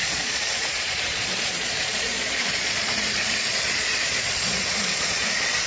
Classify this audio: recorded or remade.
remade